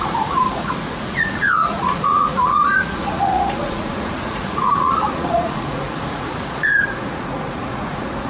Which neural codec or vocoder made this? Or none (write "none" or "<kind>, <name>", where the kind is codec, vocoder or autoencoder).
vocoder, Vocos